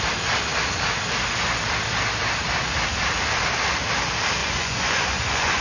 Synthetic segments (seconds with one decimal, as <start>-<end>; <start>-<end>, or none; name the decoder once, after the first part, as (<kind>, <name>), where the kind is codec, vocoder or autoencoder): 4.4-5.6 (vocoder, Vocos)